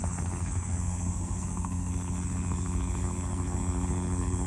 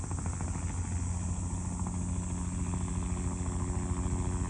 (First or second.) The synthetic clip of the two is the first